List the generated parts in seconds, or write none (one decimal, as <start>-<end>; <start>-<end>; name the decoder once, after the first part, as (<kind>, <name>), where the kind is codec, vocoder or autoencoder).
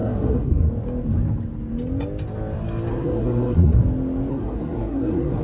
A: 0.0-0.7 (codec, SNAC); 2.9-3.8; 4.3-5.4